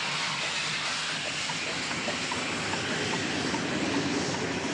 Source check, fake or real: real